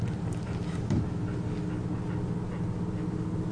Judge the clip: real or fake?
real